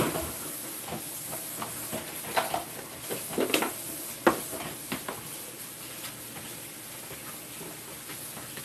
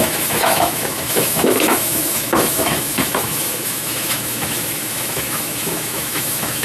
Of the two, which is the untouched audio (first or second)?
first